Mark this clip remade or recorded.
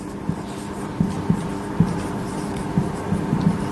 remade